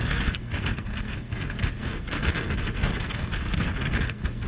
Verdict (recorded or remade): remade